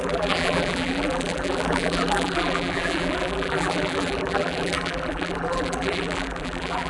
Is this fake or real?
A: fake